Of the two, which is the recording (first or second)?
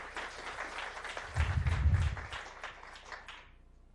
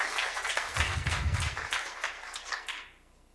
first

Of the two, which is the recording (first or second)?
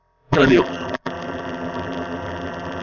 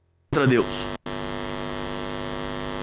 second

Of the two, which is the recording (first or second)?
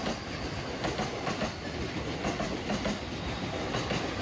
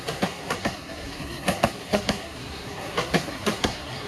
first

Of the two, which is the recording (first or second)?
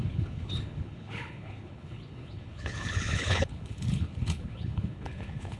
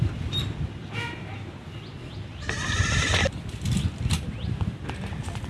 second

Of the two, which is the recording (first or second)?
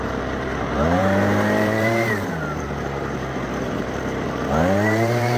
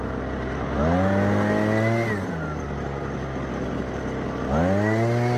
second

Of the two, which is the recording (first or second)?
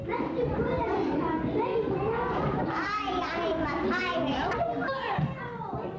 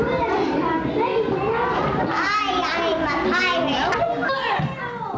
second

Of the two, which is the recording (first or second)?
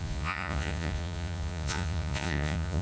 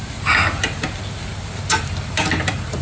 second